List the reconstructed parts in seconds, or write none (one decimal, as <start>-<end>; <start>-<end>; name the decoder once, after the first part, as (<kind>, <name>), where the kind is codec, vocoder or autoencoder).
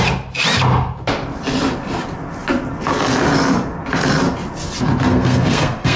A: 5.1-6.0 (codec, SNAC)